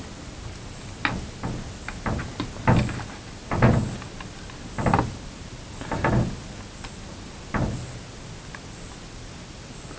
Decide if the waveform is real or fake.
real